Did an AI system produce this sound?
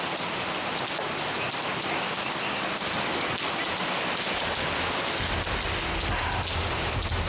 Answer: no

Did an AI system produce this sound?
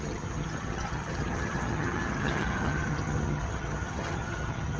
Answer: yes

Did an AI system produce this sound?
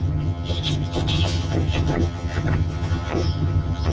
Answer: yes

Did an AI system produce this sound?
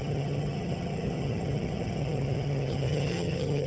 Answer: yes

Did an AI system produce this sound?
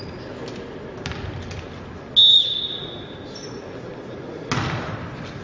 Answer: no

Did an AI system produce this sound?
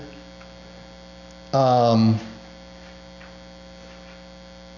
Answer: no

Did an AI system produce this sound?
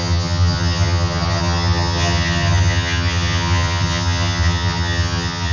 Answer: yes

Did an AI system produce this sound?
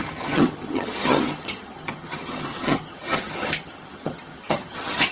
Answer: yes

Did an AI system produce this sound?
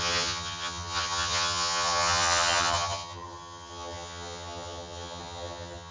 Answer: yes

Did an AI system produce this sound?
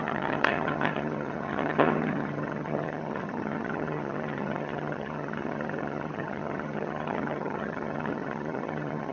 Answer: yes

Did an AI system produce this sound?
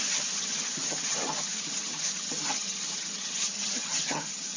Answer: yes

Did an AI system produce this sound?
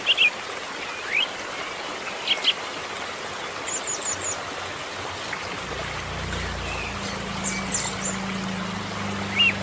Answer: no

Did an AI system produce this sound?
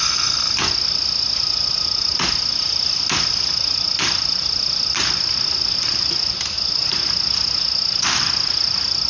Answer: no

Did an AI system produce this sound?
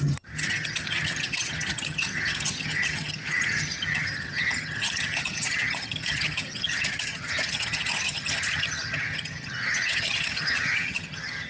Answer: yes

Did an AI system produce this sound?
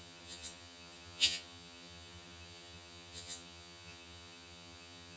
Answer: yes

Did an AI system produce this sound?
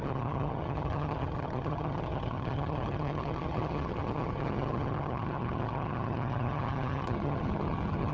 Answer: yes